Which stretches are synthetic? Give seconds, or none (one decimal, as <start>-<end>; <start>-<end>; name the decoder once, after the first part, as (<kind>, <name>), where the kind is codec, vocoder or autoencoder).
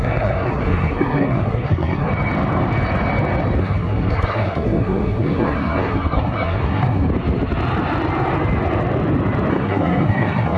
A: 0.0-2.1 (codec, SNAC); 3.6-7.1; 9.5-10.6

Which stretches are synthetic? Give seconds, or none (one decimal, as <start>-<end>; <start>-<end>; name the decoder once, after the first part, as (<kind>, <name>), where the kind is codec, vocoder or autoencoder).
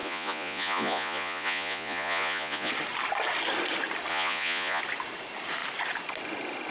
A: 0.0-2.7 (vocoder, Vocos); 4.1-4.8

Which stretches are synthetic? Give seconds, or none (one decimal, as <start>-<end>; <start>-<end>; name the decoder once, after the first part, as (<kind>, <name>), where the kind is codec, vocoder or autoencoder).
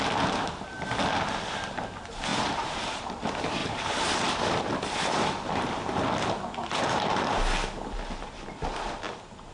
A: 2.3-3.0 (vocoder, BigVGAN v2); 3.6-4.6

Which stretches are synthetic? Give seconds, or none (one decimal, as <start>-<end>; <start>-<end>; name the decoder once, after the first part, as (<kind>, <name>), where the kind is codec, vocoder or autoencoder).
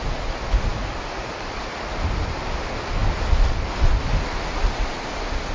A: none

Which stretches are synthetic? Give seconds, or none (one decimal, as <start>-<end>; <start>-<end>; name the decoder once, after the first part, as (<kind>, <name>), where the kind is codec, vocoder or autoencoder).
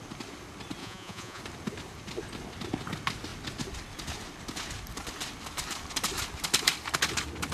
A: 0.8-1.4 (vocoder, Vocos)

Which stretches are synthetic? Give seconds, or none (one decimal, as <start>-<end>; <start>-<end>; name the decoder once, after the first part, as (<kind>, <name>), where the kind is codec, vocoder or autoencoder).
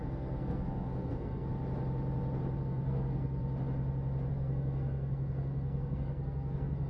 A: 0.0-1.5 (codec, SNAC); 2.6-3.4; 4.3-6.9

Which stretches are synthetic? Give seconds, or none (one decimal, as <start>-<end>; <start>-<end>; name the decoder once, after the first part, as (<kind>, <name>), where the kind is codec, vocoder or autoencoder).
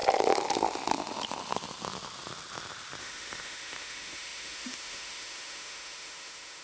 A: 3.0-6.6 (autoencoder, DAC-VAE)